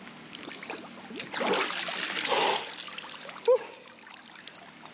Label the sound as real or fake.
real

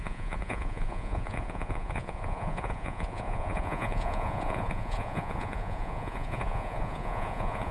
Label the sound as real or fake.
fake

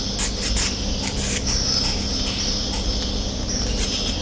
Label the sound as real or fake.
real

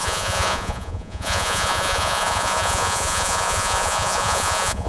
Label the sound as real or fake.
fake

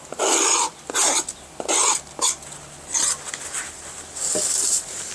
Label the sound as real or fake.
real